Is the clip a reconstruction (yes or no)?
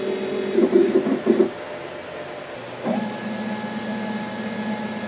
no